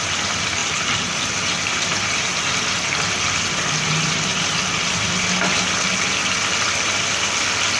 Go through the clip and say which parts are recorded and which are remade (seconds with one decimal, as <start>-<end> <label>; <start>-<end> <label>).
0.0-0.6 recorded; 0.6-2.1 remade; 2.1-7.8 recorded